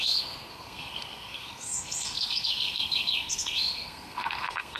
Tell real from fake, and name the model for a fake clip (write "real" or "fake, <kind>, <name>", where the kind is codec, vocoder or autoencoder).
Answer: fake, codec, SNAC